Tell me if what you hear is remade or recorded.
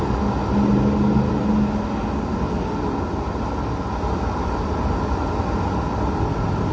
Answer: recorded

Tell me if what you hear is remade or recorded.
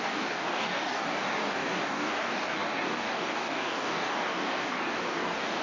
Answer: remade